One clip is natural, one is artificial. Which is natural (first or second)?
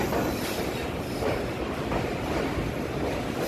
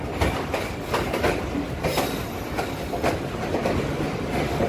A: second